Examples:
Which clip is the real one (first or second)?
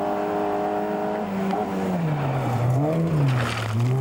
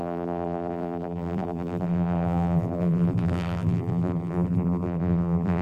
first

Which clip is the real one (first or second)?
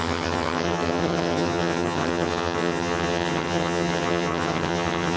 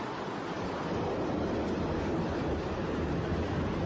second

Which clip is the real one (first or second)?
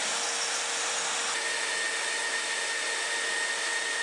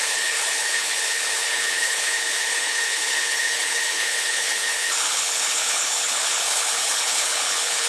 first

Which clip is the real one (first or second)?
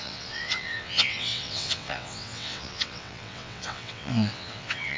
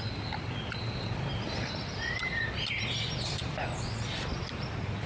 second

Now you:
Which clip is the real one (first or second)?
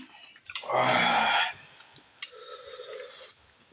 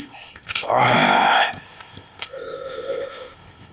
first